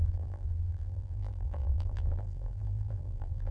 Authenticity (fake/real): fake